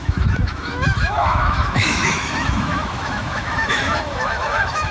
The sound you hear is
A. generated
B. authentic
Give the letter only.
A